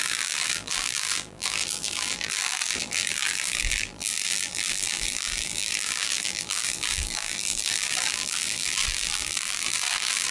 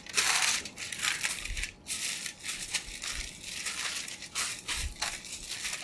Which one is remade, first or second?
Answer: first